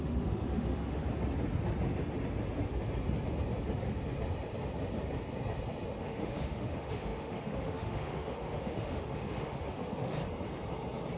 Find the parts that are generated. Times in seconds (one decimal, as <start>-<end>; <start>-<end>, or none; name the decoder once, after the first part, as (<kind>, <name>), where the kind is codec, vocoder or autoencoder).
0.0-1.0 (autoencoder, DAC-VAE); 6.0-10.2